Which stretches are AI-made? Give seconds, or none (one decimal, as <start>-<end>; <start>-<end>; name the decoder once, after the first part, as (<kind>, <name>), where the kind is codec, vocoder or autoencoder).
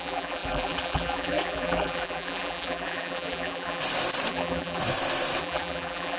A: 0.0-3.8 (vocoder, BigVGAN v2); 4.3-4.8; 5.4-6.2